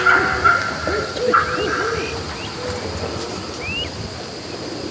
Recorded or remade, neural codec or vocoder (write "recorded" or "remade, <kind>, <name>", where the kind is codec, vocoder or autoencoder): recorded